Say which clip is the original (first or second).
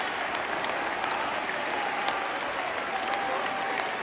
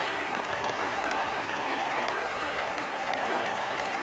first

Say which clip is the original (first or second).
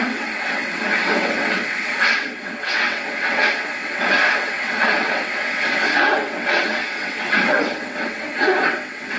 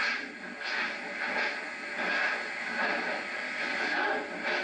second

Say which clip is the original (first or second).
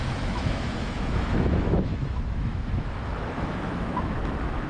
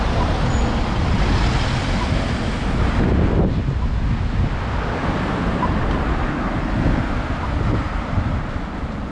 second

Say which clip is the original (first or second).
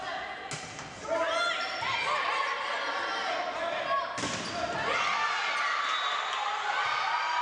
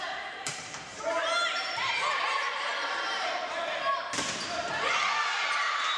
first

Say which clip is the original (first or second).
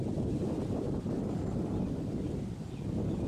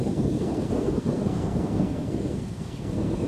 first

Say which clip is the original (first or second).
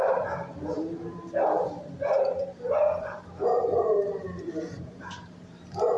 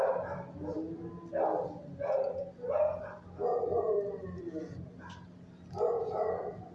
second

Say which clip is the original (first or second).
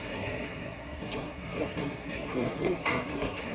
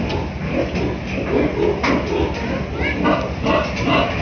second